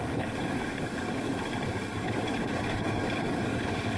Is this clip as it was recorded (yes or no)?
no